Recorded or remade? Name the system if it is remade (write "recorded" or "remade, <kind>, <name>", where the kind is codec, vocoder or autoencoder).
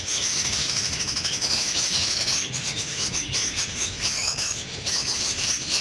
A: remade, autoencoder, DAC-VAE